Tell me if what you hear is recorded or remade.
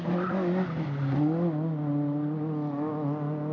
recorded